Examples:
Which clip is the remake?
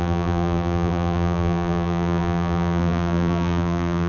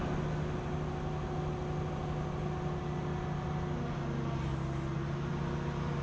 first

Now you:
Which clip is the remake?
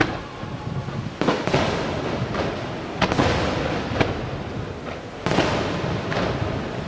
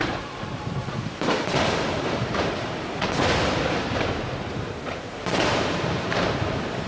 second